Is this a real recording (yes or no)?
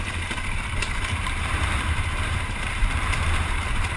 no